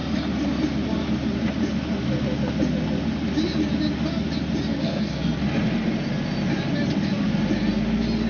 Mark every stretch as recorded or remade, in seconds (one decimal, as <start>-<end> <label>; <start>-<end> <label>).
0.0-4.7 recorded; 4.7-5.4 remade; 5.4-8.3 recorded